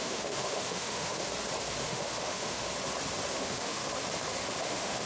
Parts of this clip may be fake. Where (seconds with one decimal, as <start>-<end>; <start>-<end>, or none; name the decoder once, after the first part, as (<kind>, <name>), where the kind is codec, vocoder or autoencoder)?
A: 0.0-1.3 (autoencoder, DAC-VAE); 1.8-2.7; 3.3-3.8; 4.6-5.1